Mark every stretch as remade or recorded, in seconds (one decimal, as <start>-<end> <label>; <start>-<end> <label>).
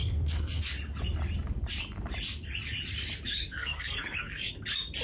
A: 0.0-0.6 remade; 0.6-3.4 recorded; 3.4-4.5 remade; 4.5-5.0 recorded